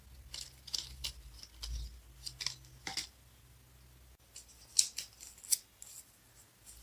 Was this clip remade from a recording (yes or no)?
no